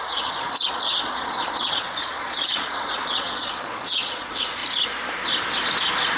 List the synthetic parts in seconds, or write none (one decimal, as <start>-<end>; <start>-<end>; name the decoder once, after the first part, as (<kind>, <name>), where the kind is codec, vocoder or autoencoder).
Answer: 0.0-4.6 (vocoder, Vocos)